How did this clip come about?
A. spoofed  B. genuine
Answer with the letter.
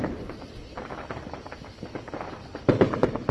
B